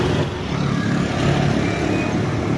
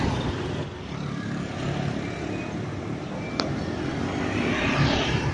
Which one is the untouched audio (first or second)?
first